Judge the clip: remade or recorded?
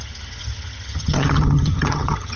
remade